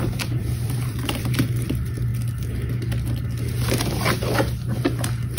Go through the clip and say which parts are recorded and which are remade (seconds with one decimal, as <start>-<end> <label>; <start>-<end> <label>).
0.0-2.1 remade; 2.1-5.4 recorded